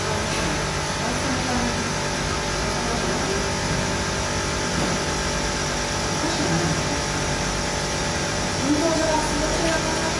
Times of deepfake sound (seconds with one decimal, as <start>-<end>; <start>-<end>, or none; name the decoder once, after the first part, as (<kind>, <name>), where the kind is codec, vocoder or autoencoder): 8.0-9.3 (vocoder, BigVGAN v2)